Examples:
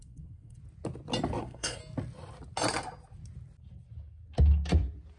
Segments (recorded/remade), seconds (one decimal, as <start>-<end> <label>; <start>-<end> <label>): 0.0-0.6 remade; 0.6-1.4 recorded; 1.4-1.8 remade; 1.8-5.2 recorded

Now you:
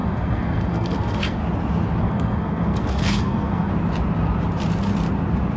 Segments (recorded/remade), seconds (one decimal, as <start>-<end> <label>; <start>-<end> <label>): 0.0-1.4 remade; 1.4-2.0 recorded; 2.0-3.7 remade; 3.7-5.6 recorded

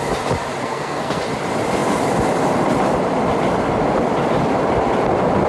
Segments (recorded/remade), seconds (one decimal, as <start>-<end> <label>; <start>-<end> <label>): 0.0-0.6 recorded; 0.6-1.2 remade; 1.2-5.5 recorded

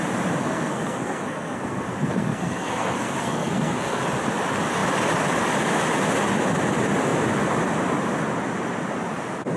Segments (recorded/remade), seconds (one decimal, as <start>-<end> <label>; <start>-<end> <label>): 0.0-0.4 recorded; 0.4-4.0 remade; 4.0-9.6 recorded

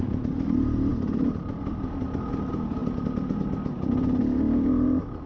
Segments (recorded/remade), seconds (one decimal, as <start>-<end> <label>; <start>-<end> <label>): 0.0-5.3 recorded

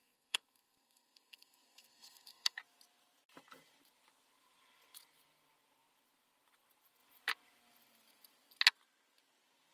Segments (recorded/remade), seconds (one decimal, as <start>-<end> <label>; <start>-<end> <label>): 0.0-2.6 remade; 2.6-9.7 recorded